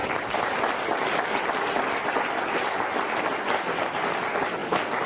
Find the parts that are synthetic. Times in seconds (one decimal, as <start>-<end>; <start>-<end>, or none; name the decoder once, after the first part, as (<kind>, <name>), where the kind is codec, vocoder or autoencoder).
none